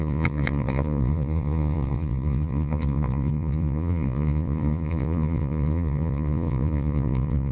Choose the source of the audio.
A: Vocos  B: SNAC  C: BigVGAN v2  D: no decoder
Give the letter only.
A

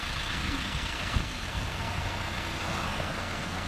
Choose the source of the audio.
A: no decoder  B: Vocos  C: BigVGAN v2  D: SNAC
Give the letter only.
D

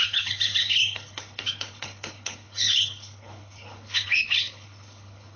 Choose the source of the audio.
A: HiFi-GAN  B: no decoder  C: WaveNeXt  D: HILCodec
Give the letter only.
D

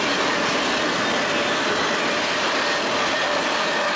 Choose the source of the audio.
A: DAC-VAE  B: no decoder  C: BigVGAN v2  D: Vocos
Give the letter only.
B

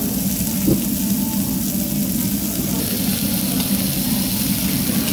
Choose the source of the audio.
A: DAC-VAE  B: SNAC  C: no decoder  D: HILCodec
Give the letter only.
C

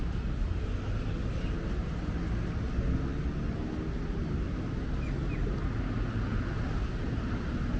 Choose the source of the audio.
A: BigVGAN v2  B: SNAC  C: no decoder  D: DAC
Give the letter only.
C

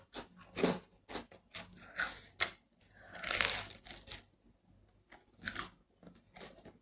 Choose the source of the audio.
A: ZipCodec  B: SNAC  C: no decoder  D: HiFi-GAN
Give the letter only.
C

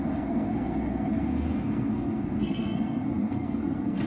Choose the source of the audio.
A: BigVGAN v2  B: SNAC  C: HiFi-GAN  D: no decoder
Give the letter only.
B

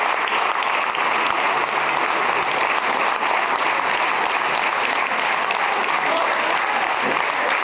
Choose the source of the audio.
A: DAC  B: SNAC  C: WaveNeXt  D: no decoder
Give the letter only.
D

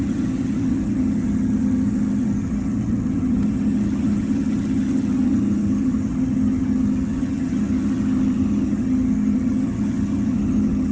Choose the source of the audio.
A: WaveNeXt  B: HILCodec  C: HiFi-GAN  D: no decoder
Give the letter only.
C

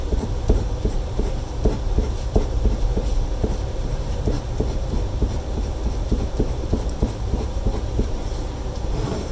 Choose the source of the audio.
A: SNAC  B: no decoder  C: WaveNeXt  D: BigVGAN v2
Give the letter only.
D